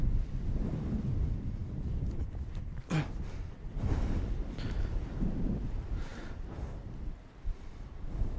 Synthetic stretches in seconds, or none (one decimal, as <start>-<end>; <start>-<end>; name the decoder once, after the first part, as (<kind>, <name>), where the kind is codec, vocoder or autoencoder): none